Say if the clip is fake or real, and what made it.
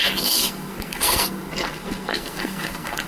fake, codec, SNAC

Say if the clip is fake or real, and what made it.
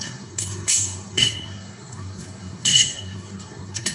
fake, codec, SNAC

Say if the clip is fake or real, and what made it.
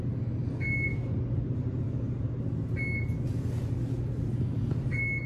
real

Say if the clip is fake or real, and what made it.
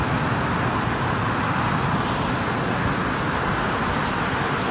real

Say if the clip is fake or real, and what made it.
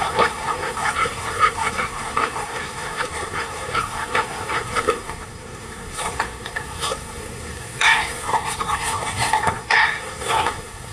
fake, codec, SNAC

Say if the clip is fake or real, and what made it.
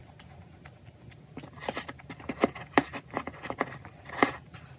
real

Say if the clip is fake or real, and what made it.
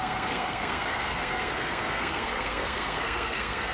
fake, codec, SNAC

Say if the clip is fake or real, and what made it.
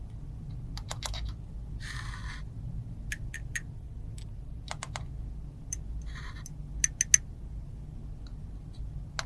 real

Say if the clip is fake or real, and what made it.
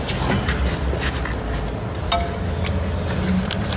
real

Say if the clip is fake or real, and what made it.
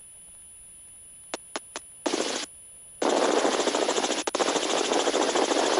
real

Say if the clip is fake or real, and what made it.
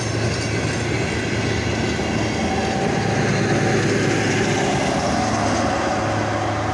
real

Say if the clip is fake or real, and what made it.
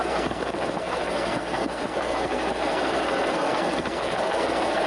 fake, codec, SNAC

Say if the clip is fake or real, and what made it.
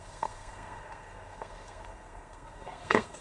fake, codec, SNAC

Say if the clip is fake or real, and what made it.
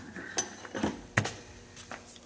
real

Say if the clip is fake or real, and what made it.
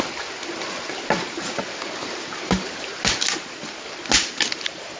real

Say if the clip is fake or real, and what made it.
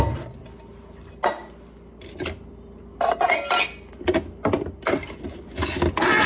real